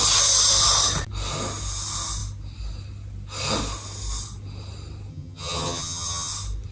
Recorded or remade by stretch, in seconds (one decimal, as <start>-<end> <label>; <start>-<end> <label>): 0.0-5.1 recorded; 5.1-6.3 remade; 6.3-6.7 recorded